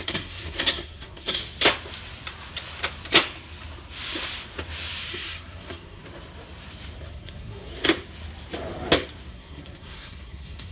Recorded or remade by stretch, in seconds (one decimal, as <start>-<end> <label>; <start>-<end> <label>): 0.0-1.4 remade; 1.4-5.1 recorded; 5.1-6.0 remade; 6.0-7.1 recorded; 7.1-7.7 remade; 7.7-9.3 recorded; 9.3-10.7 remade